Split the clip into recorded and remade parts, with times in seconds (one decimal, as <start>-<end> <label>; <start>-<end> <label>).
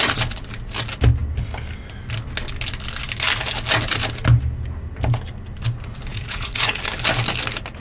0.0-6.1 recorded; 6.1-6.8 remade; 6.8-7.8 recorded